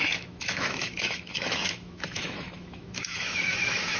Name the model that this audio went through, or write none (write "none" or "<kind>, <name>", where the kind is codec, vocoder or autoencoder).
autoencoder, DAC-VAE